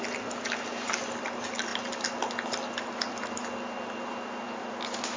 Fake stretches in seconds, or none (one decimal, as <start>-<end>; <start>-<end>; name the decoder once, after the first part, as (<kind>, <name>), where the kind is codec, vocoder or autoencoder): none